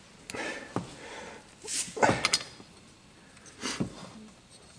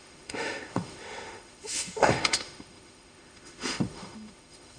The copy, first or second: second